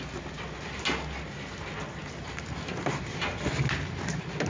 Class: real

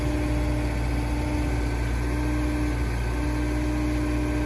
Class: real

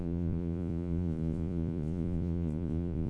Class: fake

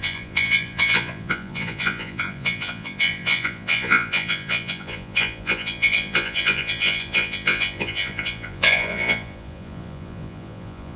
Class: fake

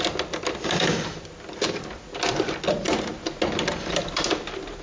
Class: real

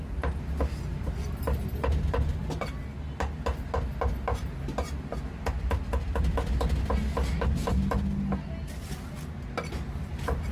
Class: real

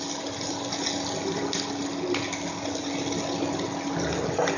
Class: real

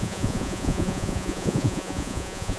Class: fake